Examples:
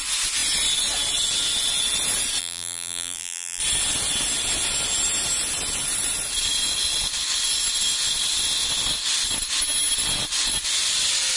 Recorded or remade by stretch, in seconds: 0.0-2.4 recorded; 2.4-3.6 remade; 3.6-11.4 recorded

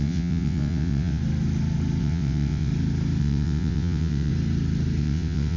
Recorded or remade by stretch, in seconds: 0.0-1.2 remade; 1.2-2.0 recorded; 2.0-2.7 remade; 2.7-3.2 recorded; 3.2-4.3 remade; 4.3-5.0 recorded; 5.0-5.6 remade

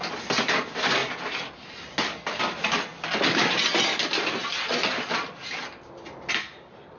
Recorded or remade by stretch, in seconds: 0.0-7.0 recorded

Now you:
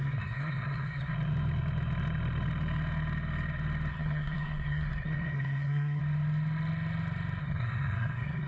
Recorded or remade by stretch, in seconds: 0.0-1.1 remade; 1.1-3.9 recorded; 3.9-6.0 remade; 6.0-7.4 recorded; 7.4-8.5 remade

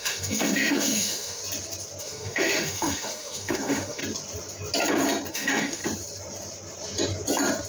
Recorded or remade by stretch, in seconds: 0.0-1.4 remade; 1.4-2.0 recorded; 2.0-4.0 remade; 4.0-5.3 recorded; 5.3-5.8 remade; 5.8-7.7 recorded

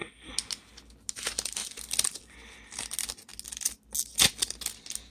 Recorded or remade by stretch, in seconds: 0.0-5.1 recorded